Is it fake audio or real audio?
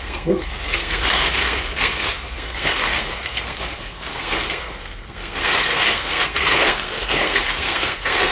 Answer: fake